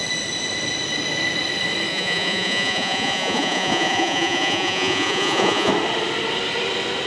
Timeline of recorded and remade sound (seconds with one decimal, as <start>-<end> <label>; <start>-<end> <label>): 0.0-1.9 recorded; 1.9-5.7 remade; 5.7-7.1 recorded